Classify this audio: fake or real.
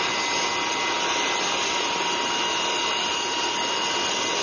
real